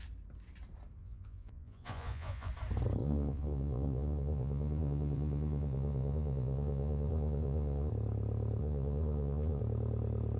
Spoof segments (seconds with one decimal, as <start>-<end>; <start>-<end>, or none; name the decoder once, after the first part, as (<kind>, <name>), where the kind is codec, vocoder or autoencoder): 1.0-2.5 (vocoder, Vocos); 3.0-7.9; 8.6-9.6

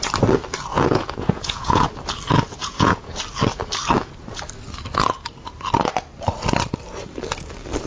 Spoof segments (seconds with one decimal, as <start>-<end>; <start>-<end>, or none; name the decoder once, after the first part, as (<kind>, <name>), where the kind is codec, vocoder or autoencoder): 0.7-1.9 (vocoder, Vocos); 2.6-3.2

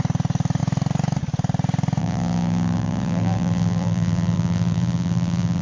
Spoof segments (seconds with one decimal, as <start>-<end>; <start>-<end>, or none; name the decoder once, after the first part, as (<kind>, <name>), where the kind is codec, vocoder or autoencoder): 2.0-5.6 (vocoder, BigVGAN v2)

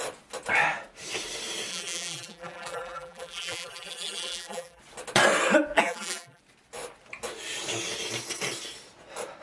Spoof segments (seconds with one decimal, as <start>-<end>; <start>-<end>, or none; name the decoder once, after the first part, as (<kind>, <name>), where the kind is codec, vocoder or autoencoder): 1.7-4.8 (vocoder, BigVGAN v2); 5.7-6.4